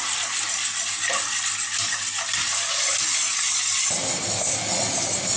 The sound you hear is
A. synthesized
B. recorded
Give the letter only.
B